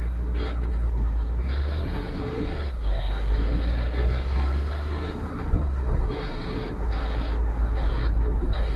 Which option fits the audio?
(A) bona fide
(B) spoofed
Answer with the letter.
B